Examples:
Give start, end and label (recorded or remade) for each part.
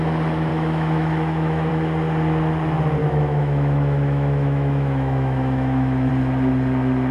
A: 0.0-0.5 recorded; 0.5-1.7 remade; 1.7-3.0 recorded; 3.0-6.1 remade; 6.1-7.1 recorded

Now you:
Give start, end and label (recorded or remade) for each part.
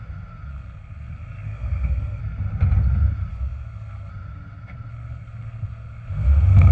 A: 0.0-0.5 recorded; 0.5-2.2 remade; 2.2-3.3 recorded; 3.3-4.1 remade; 4.1-4.9 recorded; 4.9-6.7 remade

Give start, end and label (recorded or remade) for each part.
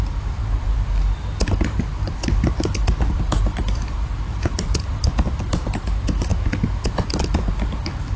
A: 0.0-0.4 recorded; 0.4-4.8 remade; 4.8-8.2 recorded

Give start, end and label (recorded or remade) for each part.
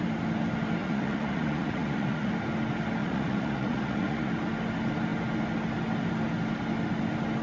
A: 0.0-0.8 recorded; 0.8-2.3 remade; 2.3-3.0 recorded; 3.0-4.3 remade; 4.3-7.4 recorded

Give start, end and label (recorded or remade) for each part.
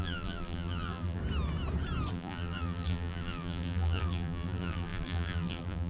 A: 0.0-1.2 remade; 1.2-2.1 recorded; 2.1-5.9 remade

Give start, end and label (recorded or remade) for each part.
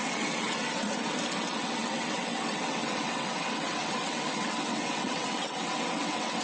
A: 0.0-0.8 remade; 0.8-1.4 recorded; 1.4-6.4 remade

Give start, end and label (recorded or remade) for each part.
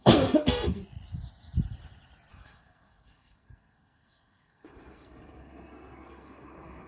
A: 0.0-0.8 remade; 0.8-2.3 recorded; 2.3-6.9 remade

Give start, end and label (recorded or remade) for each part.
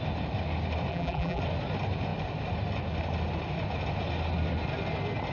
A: 0.0-0.9 recorded; 0.9-1.4 remade; 1.4-5.3 recorded